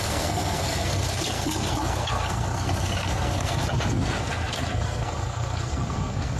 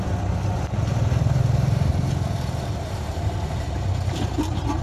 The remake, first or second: first